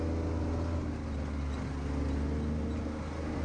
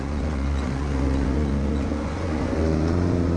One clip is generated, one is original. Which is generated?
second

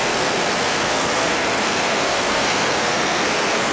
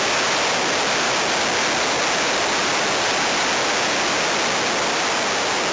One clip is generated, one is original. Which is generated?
first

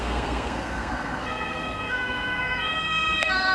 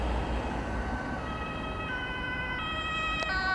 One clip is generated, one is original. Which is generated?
first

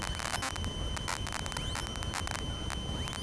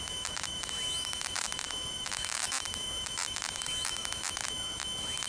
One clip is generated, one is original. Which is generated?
second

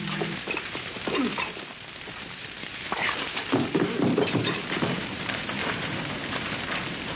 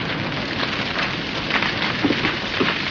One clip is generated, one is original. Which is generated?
first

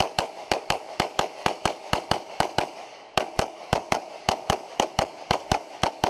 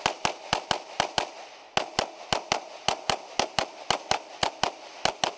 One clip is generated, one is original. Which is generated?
first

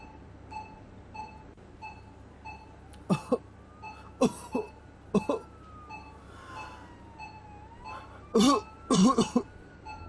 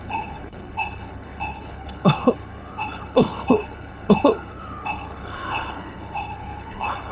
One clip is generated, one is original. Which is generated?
second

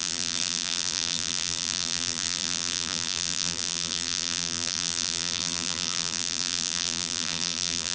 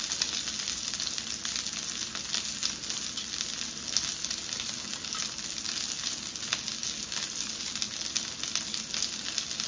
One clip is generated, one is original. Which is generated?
first